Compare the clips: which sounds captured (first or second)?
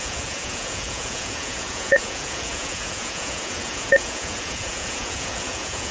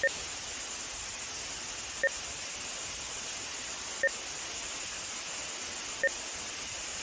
second